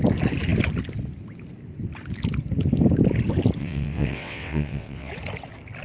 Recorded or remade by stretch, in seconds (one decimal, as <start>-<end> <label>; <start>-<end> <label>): 0.0-3.6 recorded; 3.6-5.1 remade; 5.1-5.8 recorded

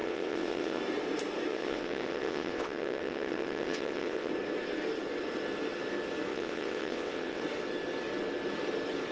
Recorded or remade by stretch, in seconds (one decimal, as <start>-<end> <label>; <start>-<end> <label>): 0.0-0.8 remade; 0.8-1.5 recorded; 1.5-4.3 remade; 4.3-6.3 recorded; 6.3-7.4 remade; 7.4-9.1 recorded

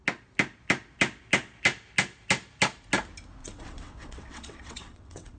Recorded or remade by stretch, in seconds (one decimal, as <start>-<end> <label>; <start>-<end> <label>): 0.0-3.4 recorded; 3.4-5.4 remade

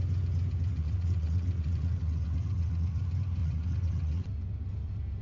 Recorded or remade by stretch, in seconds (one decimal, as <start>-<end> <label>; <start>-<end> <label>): 0.0-0.7 recorded; 0.7-3.0 remade; 3.0-3.4 recorded; 3.4-4.3 remade; 4.3-5.2 recorded

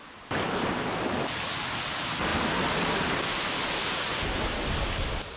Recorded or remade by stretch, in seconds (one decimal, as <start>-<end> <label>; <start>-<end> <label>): 0.0-5.4 recorded

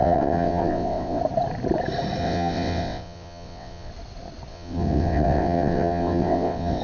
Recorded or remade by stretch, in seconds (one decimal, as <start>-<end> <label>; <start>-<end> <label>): 0.0-1.2 remade; 1.2-2.2 recorded; 2.2-3.9 remade; 3.9-4.5 recorded; 4.5-6.8 remade

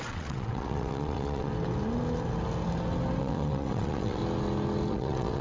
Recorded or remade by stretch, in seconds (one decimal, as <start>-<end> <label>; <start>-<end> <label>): 0.0-1.5 remade; 1.5-3.2 recorded; 3.2-4.2 remade; 4.2-4.9 recorded; 4.9-5.4 remade

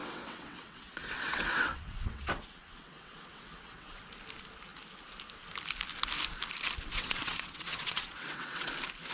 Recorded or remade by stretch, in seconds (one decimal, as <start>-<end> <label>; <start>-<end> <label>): 0.0-4.0 remade; 4.0-6.9 recorded; 6.9-8.7 remade; 8.7-9.1 recorded